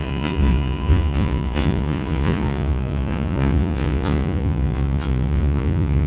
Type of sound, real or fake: fake